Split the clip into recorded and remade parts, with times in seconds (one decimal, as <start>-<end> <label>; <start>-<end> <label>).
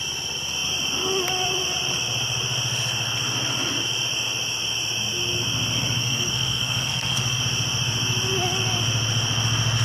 0.0-6.0 recorded; 6.0-7.4 remade; 7.4-9.8 recorded